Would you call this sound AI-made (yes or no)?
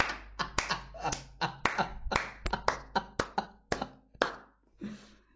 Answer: no